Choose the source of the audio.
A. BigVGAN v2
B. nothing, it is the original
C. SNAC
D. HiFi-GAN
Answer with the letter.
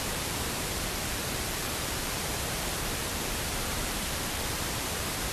A